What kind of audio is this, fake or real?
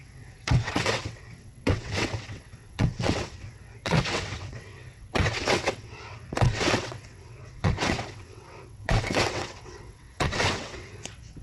fake